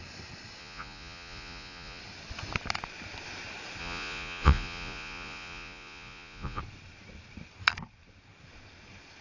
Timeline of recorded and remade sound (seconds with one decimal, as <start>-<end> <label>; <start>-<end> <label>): 0.0-0.6 recorded; 0.6-2.0 remade; 2.0-3.8 recorded; 3.8-6.6 remade; 6.6-9.2 recorded